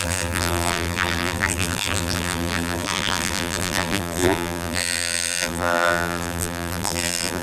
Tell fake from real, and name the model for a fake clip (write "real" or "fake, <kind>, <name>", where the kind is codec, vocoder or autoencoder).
fake, vocoder, BigVGAN v2